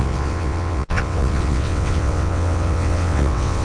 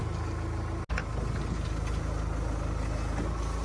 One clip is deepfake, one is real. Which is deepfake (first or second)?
first